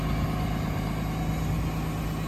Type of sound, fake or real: real